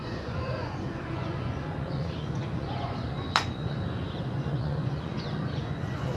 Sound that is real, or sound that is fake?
fake